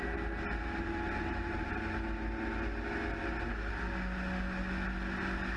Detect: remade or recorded recorded